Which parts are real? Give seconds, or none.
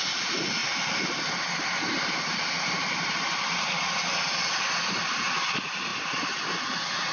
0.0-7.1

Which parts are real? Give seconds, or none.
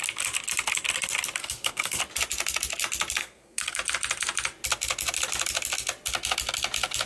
0.0-1.4; 2.0-3.2; 3.8-7.1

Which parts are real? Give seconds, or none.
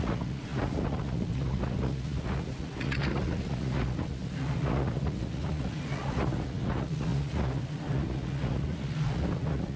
none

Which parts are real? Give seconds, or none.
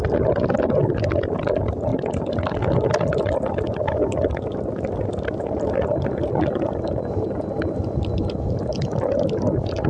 0.0-9.9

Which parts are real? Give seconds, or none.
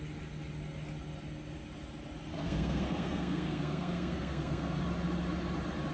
0.0-2.3; 4.8-5.9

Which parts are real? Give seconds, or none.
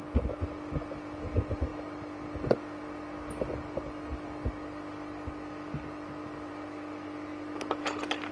0.0-8.3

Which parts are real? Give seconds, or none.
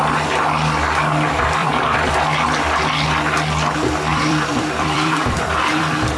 0.0-1.6; 2.1-4.1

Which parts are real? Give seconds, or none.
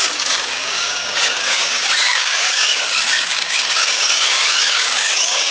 none